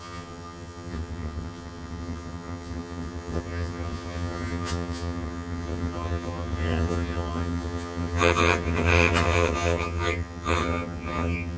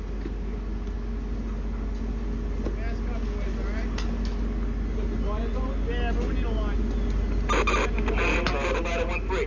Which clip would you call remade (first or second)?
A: first